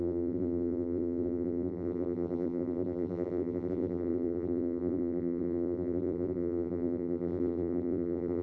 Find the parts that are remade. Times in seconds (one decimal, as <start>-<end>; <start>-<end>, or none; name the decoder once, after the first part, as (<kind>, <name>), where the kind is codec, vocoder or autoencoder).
0.0-8.4 (vocoder, BigVGAN v2)